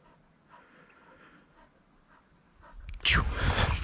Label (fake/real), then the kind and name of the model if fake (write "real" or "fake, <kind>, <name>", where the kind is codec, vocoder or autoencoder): real